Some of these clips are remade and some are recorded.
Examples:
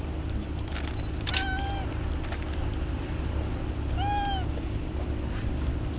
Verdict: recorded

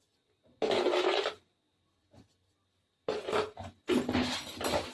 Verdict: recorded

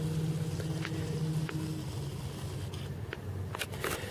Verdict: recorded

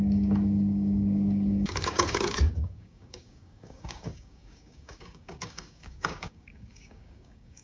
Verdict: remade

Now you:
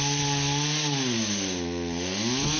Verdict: recorded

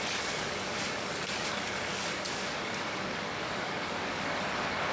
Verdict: remade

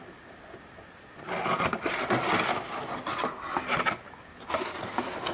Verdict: recorded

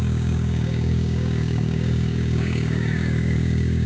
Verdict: remade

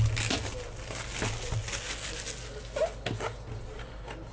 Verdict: recorded